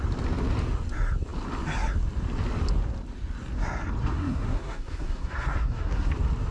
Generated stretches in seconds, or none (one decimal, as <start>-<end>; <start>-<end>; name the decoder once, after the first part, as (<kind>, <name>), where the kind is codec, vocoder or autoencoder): 4.0-6.1 (codec, SNAC)

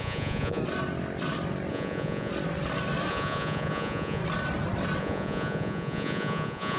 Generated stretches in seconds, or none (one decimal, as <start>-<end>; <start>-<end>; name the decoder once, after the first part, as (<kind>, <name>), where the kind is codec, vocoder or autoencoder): 0.0-0.6 (vocoder, Vocos); 1.7-2.3; 3.1-4.2; 5.0-6.8

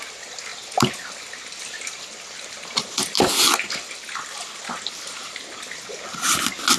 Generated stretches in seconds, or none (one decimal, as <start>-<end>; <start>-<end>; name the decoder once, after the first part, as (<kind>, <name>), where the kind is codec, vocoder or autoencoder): none